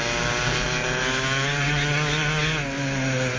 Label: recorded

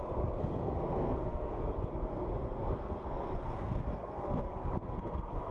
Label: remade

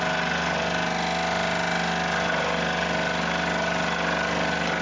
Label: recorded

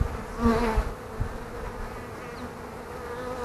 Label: recorded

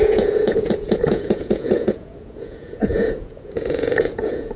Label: remade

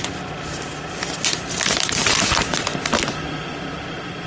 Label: recorded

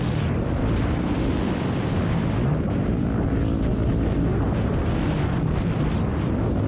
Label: recorded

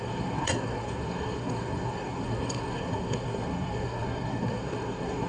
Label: remade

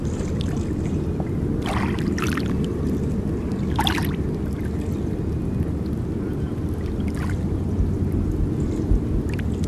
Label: recorded